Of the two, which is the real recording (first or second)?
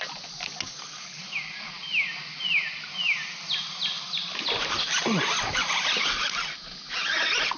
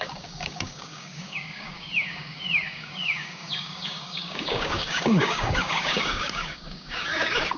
first